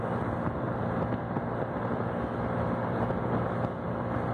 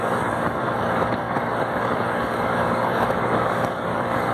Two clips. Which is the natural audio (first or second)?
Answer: first